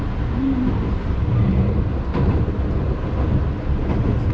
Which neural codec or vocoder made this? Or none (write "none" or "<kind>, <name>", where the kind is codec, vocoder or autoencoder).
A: none